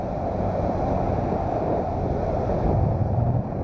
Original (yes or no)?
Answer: yes